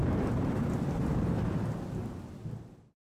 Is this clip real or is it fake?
real